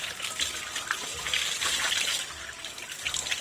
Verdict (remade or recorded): recorded